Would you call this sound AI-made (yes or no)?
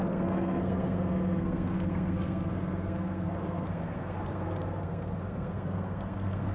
yes